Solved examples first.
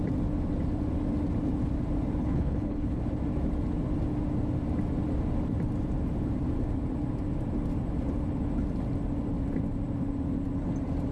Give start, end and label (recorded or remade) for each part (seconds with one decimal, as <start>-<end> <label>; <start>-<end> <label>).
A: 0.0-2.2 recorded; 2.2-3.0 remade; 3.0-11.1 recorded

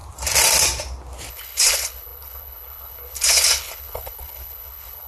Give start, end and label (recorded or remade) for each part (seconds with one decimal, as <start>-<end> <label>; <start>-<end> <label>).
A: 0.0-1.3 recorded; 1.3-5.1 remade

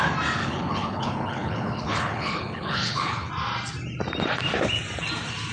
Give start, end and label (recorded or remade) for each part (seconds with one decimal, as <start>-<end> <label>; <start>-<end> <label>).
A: 0.0-0.4 recorded; 0.4-3.3 remade; 3.3-5.5 recorded

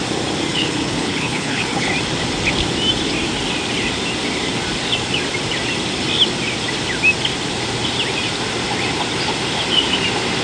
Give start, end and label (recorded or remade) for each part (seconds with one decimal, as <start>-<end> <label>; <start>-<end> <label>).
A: 0.0-0.5 recorded; 0.5-1.9 remade; 1.9-10.4 recorded